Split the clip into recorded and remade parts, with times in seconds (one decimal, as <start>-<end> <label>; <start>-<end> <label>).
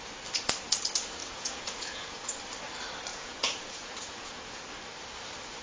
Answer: 0.0-1.2 recorded; 1.2-2.4 remade; 2.4-3.1 recorded; 3.1-4.6 remade; 4.6-5.6 recorded